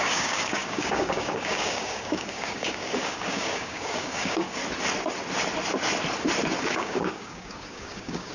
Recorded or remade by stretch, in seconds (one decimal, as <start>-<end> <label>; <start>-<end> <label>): 0.0-4.6 remade; 4.6-6.6 recorded; 6.6-8.3 remade